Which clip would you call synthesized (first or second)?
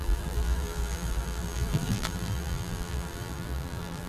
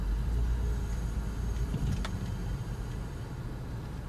first